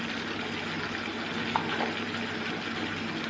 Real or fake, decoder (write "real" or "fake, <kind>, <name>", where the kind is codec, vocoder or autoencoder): real